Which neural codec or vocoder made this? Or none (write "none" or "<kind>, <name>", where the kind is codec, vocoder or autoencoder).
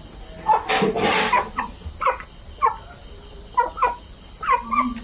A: none